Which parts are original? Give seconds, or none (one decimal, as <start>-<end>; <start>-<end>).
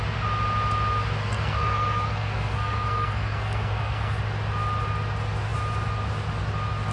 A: 0.0-1.2; 4.2-6.9